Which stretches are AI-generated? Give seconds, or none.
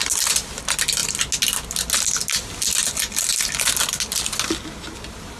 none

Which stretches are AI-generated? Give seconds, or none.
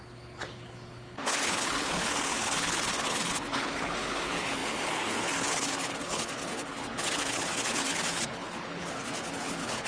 0.0-9.9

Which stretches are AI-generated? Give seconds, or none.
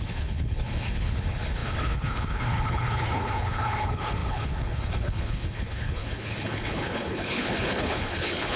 0.0-8.6